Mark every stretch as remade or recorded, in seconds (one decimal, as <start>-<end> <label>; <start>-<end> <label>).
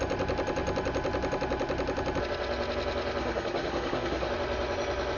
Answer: 0.0-3.2 recorded; 3.2-4.3 remade; 4.3-5.2 recorded